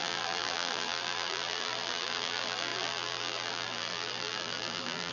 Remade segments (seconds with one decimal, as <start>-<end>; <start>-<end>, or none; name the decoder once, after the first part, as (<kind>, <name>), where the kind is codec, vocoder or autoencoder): 0.0-5.1 (vocoder, BigVGAN v2)